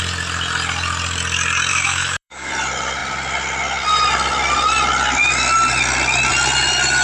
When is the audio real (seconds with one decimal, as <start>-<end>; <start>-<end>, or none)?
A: 0.0-1.7; 2.5-7.0

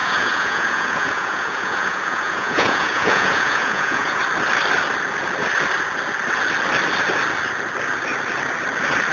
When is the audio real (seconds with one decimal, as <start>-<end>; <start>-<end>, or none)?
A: 4.2-9.1

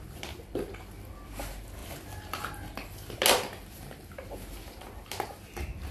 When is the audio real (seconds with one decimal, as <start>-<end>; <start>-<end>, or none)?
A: 0.0-5.9

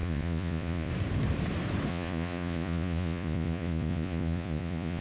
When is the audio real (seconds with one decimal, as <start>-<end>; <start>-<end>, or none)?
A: 0.9-1.9

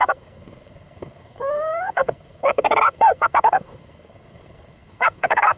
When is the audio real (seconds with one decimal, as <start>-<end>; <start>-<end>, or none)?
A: none